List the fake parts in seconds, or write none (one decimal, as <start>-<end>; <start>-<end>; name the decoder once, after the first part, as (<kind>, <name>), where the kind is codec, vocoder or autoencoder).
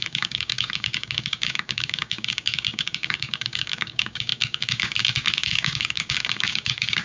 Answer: 0.0-7.0 (codec, DAC)